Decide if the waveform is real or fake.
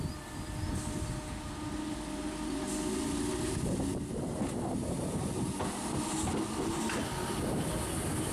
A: real